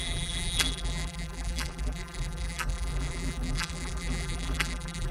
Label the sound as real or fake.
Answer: fake